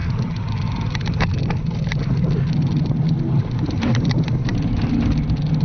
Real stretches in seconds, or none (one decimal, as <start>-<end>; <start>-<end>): 0.0-5.6